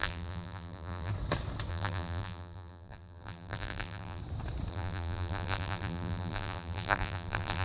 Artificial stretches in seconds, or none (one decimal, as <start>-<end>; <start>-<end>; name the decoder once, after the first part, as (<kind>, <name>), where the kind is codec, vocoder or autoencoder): 0.0-1.1 (vocoder, BigVGAN v2); 1.7-4.2; 4.7-7.6